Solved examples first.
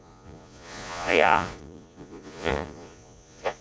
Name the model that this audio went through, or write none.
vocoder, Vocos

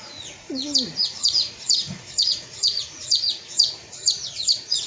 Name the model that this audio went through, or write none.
vocoder, Vocos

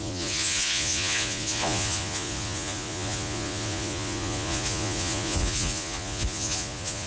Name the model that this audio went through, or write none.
vocoder, Vocos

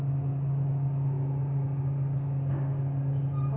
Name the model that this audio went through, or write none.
none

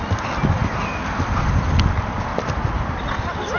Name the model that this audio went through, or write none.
none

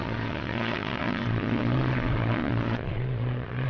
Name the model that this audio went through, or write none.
vocoder, Vocos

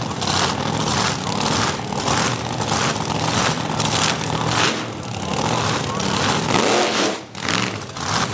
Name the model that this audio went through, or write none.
none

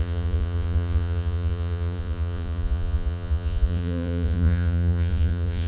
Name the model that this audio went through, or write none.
vocoder, Vocos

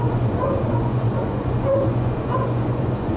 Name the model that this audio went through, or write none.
vocoder, Vocos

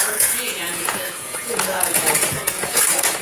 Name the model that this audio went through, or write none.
vocoder, Vocos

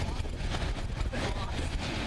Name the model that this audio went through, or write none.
vocoder, Vocos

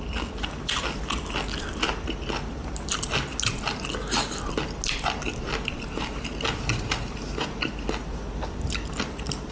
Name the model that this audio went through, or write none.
none